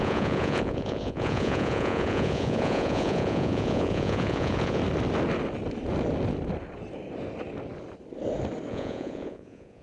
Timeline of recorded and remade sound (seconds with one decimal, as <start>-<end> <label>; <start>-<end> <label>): 0.0-4.8 remade; 4.8-8.7 recorded; 8.7-9.8 remade